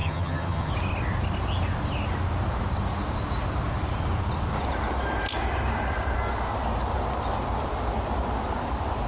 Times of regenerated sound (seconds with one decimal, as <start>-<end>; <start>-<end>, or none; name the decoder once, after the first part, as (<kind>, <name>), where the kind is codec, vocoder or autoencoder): 0.0-0.7 (vocoder, HiFi-GAN)